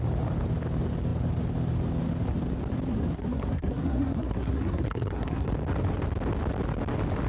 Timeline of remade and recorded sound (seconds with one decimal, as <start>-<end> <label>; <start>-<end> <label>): 0.0-2.9 recorded; 2.9-5.5 remade; 5.5-7.3 recorded